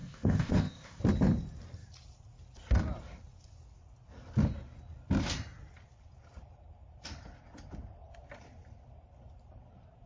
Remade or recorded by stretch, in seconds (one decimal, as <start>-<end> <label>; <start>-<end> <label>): 0.0-1.0 remade; 1.0-10.1 recorded